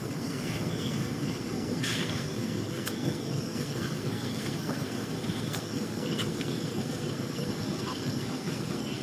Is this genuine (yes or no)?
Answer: no